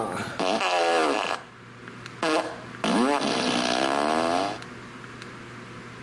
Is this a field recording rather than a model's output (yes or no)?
yes